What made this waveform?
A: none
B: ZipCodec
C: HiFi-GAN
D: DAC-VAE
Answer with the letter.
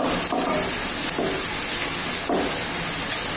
A